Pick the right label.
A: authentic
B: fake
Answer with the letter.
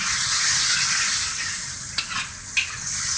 A